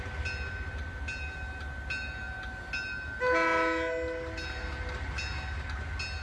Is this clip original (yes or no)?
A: yes